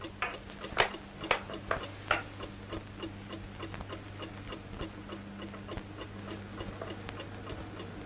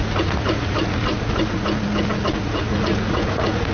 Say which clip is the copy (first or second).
second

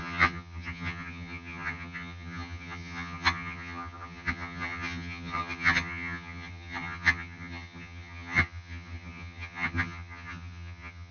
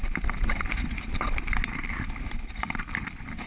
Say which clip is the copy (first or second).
first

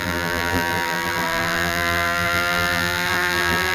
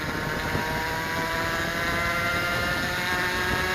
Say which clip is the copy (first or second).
first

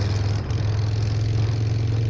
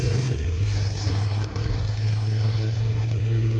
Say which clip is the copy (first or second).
second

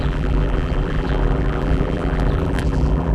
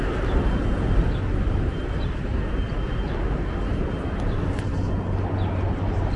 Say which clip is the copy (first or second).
first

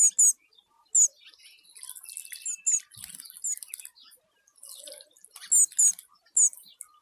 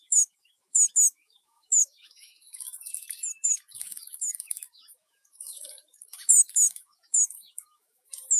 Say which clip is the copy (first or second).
second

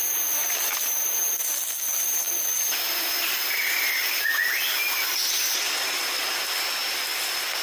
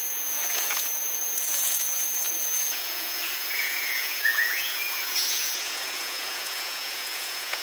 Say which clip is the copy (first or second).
second